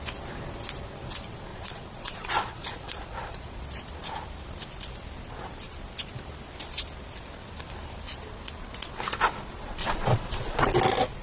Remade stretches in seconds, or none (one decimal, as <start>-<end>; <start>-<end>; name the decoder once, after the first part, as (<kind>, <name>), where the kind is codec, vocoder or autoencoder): 1.5-3.6 (vocoder, Vocos); 9.8-10.7